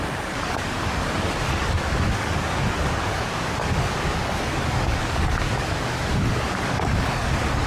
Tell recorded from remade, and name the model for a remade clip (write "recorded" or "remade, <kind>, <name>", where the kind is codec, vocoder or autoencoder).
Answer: remade, codec, DAC